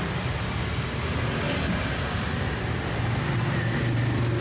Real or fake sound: real